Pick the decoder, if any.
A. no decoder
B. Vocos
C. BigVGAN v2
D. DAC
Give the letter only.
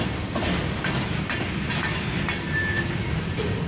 A